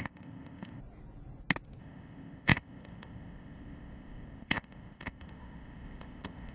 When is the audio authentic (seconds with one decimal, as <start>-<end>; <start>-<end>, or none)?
0.8-1.8